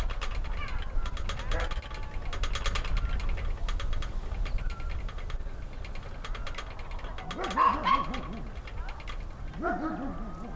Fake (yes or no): no